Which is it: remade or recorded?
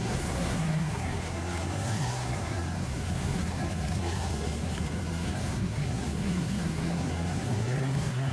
remade